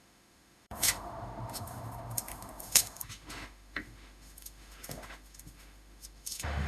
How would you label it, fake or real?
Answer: fake